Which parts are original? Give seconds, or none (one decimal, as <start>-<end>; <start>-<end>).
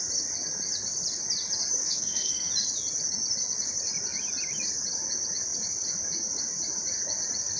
0.0-1.8; 2.5-7.6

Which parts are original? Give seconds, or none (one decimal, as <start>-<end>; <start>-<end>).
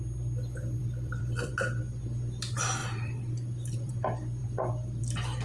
0.0-0.8; 1.5-2.8; 3.9-4.4; 5.0-5.4